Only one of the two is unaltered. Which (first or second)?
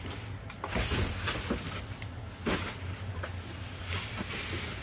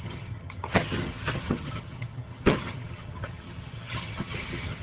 first